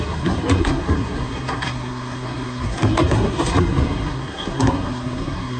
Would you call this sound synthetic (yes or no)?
yes